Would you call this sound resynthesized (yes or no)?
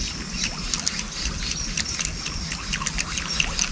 no